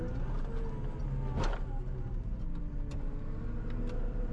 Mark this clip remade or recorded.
recorded